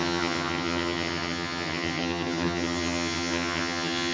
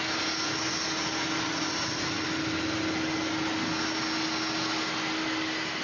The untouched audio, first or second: second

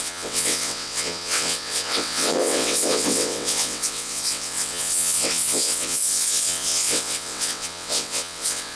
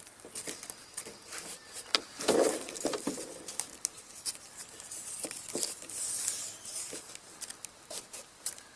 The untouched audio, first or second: second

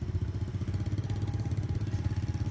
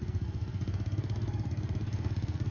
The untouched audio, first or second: first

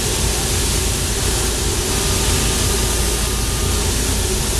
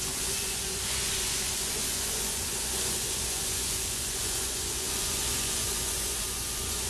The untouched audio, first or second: first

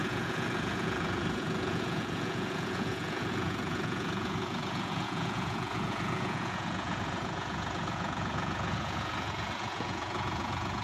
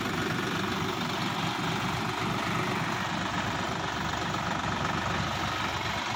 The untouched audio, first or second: second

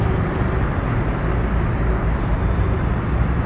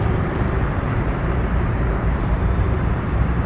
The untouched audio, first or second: first